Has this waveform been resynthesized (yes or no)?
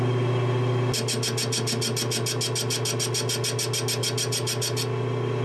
no